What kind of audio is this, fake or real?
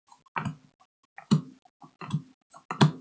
real